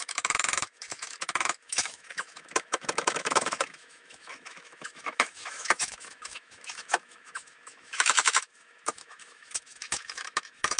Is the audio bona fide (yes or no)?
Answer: no